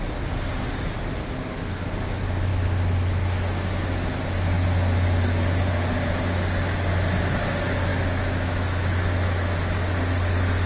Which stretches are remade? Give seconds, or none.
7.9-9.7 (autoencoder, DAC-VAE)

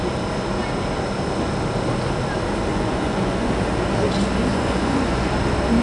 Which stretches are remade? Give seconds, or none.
2.7-3.5 (vocoder, Vocos); 4.5-5.3

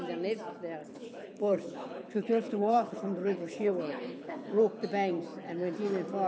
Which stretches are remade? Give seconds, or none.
0.8-4.6 (codec, HILCodec)

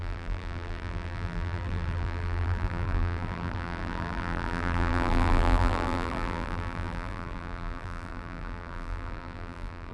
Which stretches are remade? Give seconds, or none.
0.0-9.9 (vocoder, BigVGAN v2)

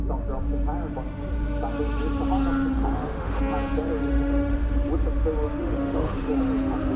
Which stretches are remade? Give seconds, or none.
2.7-3.4 (autoencoder, DAC-VAE); 4.0-4.7; 5.6-6.4

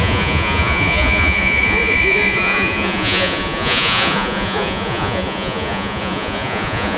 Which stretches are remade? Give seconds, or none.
0.0-7.0 (vocoder, Vocos)

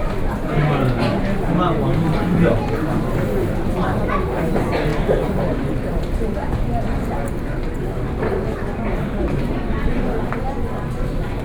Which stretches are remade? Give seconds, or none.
none